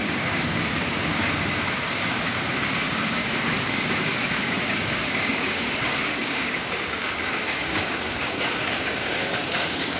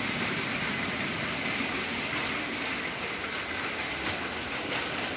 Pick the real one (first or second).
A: second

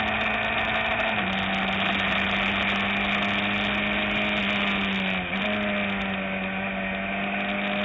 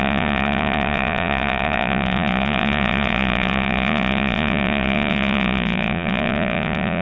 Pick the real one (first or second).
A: first